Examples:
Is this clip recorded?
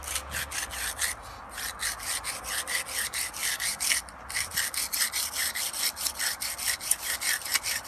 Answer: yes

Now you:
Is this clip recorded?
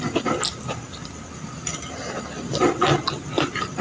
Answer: yes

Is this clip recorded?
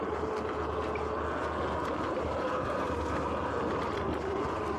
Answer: yes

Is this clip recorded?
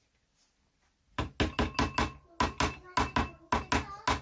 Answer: yes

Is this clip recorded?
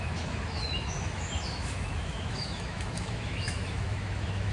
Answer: no